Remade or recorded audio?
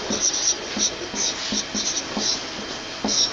recorded